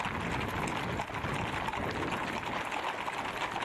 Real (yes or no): yes